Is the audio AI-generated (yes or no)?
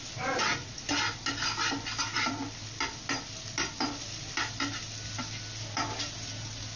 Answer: no